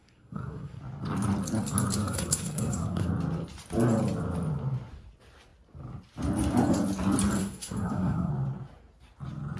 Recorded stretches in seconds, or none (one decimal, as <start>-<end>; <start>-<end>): 0.8-2.0; 3.1-7.4; 8.3-9.6